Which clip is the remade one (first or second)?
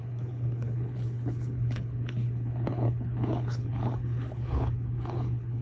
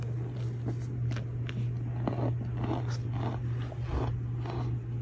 first